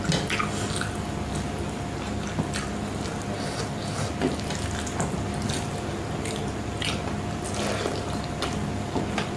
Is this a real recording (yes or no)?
yes